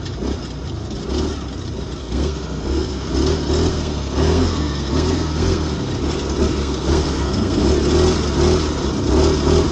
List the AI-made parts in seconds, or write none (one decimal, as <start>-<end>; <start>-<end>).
2.0-3.1; 3.7-5.9; 6.6-7.7

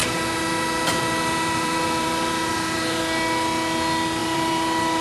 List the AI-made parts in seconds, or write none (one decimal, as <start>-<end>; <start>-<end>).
0.0-3.0; 4.2-5.0

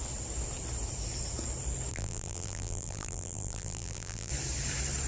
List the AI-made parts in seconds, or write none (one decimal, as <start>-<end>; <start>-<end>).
1.9-4.3

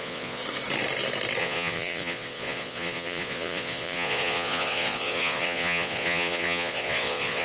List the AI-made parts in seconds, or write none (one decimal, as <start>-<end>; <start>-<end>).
0.0-0.4; 1.4-7.4

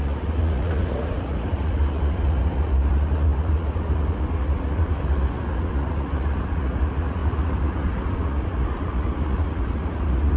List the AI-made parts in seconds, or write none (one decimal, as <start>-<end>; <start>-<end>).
0.0-10.4

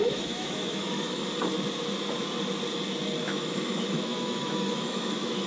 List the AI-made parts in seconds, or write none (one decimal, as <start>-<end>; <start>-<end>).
0.0-1.2; 3.2-5.5